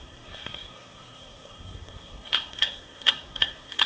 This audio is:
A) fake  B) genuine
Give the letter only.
A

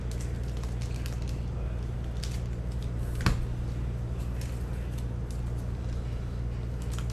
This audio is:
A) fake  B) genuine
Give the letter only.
B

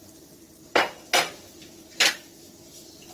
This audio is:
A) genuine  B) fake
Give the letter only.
A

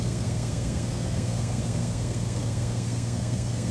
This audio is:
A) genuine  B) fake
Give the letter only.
B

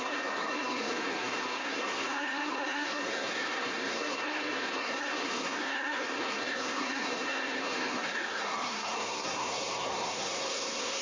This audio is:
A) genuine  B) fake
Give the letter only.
B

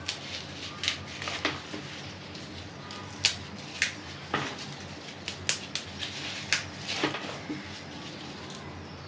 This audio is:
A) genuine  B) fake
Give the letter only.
A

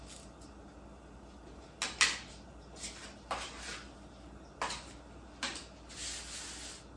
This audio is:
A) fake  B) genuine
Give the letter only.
B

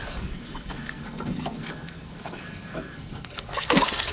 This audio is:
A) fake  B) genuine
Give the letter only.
A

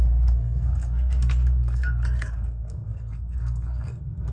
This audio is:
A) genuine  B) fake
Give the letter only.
B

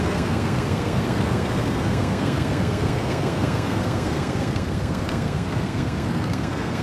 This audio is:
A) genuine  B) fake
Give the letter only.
B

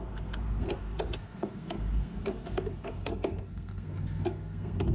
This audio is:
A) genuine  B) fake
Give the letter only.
B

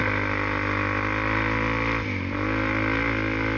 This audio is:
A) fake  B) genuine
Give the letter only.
B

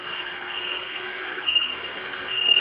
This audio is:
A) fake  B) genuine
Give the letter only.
A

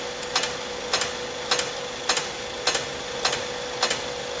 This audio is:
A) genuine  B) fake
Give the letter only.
A